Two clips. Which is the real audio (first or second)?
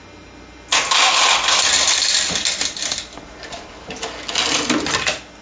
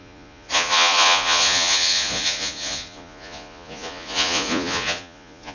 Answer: first